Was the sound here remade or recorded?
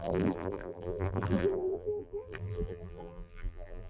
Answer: remade